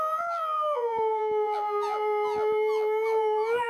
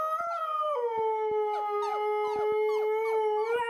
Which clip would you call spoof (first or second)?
first